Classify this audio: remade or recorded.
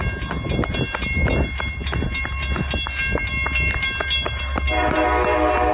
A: recorded